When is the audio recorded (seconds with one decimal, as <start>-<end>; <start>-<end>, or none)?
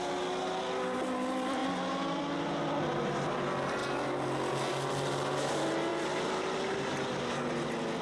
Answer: 0.0-8.0